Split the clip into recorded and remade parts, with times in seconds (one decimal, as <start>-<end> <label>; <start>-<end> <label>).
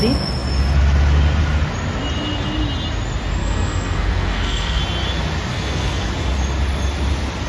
0.0-3.4 recorded; 3.4-4.8 remade; 4.8-5.5 recorded; 5.5-6.1 remade; 6.1-7.5 recorded